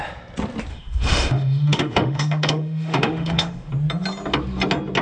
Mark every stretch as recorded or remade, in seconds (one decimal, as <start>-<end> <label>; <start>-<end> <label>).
0.0-0.7 recorded; 0.7-3.7 remade; 3.7-5.0 recorded